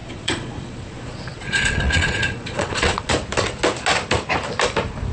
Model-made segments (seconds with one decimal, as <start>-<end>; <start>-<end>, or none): 0.0-3.1